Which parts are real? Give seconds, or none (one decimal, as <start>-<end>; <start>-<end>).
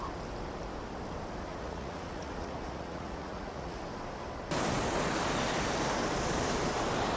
0.0-1.5; 3.8-7.2